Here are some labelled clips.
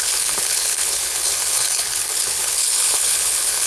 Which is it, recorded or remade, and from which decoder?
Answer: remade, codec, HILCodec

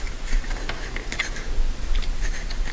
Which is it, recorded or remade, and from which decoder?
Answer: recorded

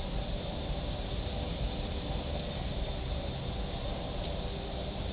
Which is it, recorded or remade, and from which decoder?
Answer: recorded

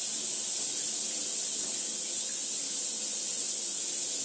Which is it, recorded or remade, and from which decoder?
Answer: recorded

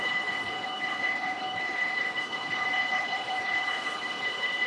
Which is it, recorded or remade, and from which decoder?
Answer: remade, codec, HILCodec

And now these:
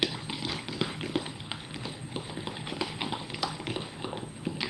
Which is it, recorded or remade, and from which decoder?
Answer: remade, codec, HILCodec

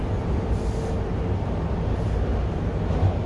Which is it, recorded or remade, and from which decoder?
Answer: recorded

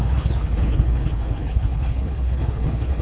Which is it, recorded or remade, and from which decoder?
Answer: remade, codec, HILCodec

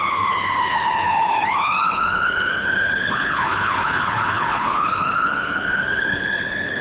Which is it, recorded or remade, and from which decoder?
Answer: remade, codec, HILCodec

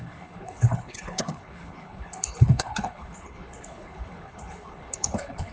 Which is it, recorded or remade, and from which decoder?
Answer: remade, codec, HILCodec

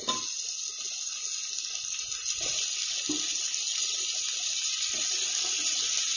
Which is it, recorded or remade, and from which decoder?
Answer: recorded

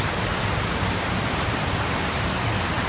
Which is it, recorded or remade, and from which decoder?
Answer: recorded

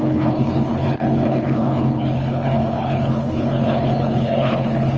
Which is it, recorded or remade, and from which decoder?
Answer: remade, codec, HILCodec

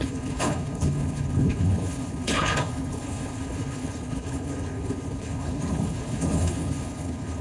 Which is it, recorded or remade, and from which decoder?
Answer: remade, codec, HILCodec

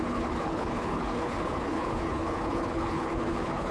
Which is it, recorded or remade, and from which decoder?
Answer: remade, codec, HILCodec